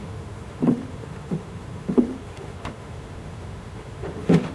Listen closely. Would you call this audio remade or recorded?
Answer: remade